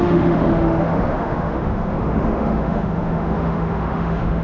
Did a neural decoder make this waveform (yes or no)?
yes